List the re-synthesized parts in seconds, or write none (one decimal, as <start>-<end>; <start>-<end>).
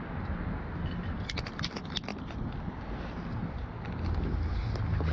none